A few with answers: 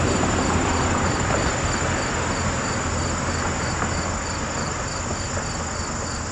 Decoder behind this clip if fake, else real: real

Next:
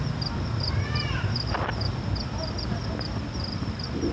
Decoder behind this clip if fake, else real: fake, vocoder, BigVGAN v2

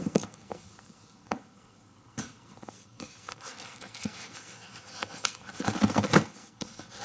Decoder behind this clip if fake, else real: fake, codec, SNAC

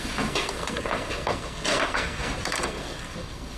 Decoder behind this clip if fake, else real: fake, codec, SNAC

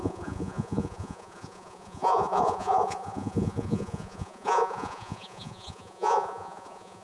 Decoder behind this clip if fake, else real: fake, vocoder, Vocos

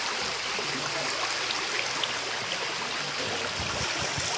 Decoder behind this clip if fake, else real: real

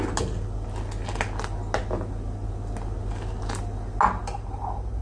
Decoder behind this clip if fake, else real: real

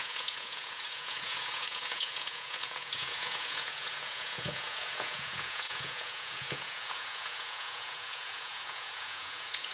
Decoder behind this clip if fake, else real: fake, vocoder, Vocos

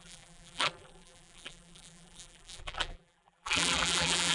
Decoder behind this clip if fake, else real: fake, vocoder, BigVGAN v2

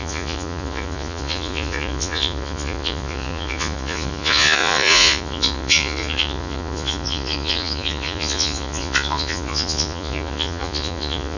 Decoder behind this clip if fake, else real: fake, vocoder, Vocos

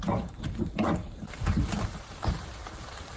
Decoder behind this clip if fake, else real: fake, vocoder, BigVGAN v2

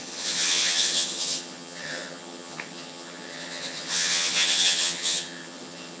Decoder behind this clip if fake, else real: fake, vocoder, HiFi-GAN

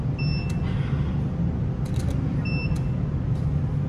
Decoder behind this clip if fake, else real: real